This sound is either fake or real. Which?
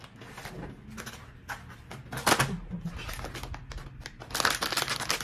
real